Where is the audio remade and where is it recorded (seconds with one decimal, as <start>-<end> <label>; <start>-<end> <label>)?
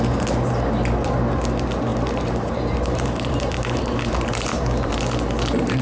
0.0-1.9 recorded; 1.9-5.0 remade; 5.0-5.8 recorded